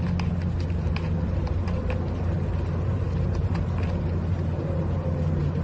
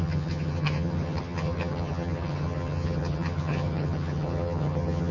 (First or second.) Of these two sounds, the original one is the first